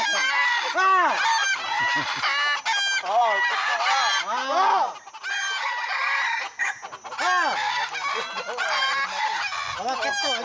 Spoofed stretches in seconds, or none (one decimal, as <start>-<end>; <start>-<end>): 8.6-9.2